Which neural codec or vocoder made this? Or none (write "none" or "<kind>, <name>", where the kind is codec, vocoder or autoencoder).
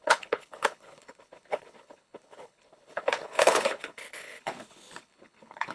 codec, HILCodec